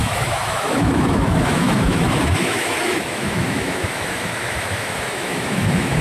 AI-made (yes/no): yes